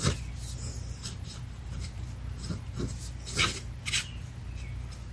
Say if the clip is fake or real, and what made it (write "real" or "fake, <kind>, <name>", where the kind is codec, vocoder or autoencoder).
real